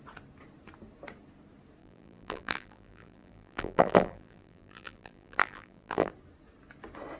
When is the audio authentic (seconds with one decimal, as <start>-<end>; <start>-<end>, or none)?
0.0-1.8; 6.1-7.2